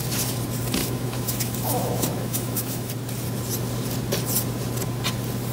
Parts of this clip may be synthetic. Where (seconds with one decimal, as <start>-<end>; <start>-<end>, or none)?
0.8-2.9